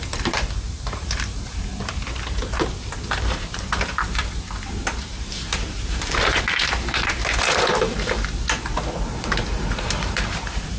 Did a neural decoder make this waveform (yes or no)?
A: yes